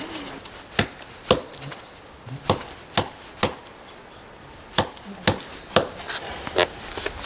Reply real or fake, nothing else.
real